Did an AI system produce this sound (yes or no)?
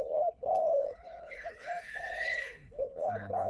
yes